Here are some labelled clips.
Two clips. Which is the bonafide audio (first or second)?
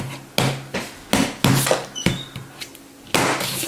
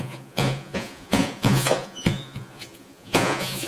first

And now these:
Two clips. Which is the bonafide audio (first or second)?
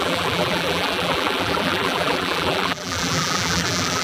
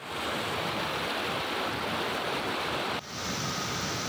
second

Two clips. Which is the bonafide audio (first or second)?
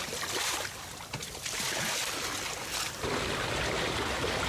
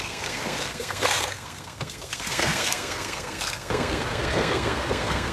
first